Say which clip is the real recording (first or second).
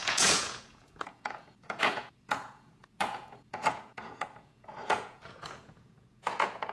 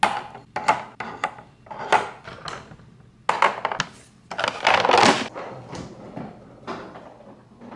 second